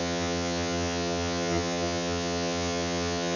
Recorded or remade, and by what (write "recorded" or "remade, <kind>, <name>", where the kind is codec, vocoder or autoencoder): remade, vocoder, HiFi-GAN